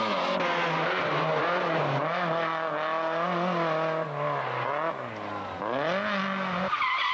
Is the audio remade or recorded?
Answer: recorded